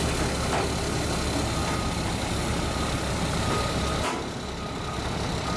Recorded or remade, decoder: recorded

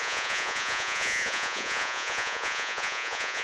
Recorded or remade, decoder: remade, vocoder, Vocos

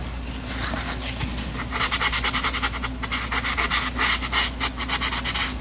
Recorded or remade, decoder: recorded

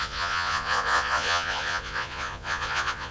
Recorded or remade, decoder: remade, vocoder, Vocos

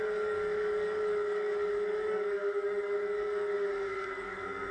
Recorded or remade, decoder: remade, codec, DAC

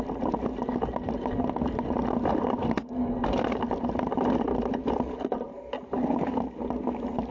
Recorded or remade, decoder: recorded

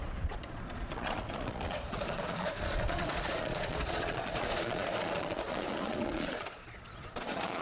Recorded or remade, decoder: remade, vocoder, Vocos